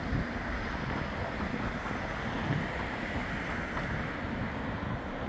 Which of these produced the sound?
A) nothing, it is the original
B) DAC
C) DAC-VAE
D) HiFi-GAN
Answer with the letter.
A